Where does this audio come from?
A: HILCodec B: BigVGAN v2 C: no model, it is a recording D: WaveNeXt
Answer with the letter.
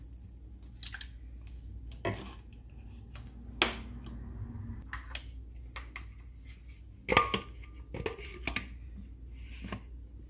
C